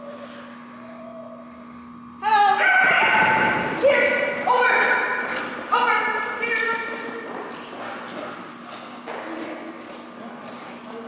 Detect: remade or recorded recorded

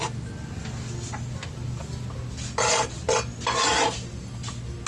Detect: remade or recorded recorded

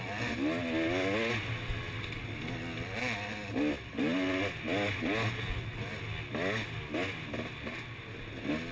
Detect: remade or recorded recorded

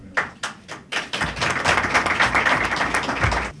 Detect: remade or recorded recorded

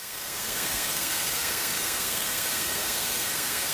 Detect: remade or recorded remade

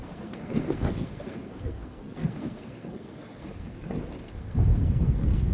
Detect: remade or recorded remade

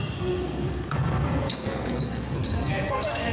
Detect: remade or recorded remade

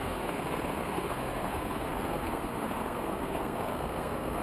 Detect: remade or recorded remade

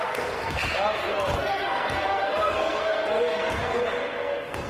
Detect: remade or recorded remade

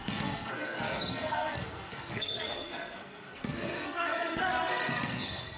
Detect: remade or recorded remade